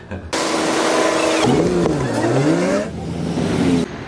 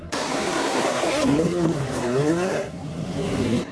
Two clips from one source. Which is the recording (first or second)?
first